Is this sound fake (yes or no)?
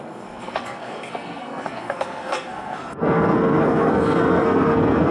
yes